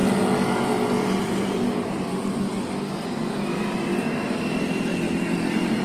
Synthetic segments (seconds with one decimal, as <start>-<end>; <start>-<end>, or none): 1.2-2.5; 4.9-5.8